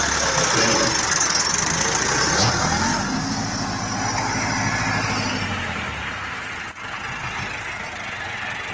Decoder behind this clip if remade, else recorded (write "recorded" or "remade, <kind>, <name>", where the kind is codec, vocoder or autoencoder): recorded